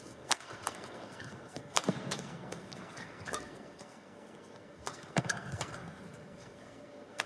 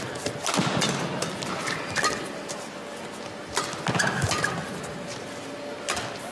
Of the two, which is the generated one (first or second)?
first